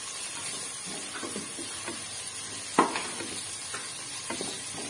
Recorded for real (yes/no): yes